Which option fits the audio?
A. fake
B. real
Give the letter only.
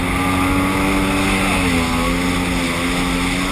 B